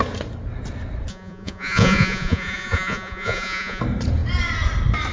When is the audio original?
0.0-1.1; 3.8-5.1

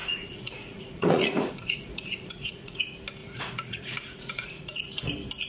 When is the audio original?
2.8-3.2; 4.9-5.5

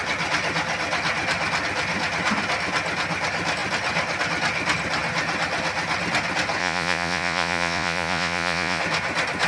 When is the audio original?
0.0-6.6; 8.8-9.5

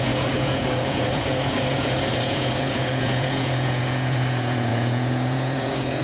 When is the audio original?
none

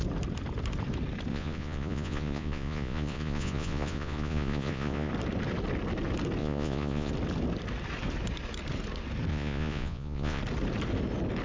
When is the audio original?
0.0-1.3; 5.1-6.4; 7.1-9.3; 10.4-11.4

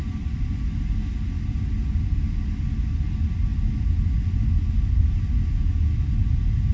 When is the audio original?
0.0-6.7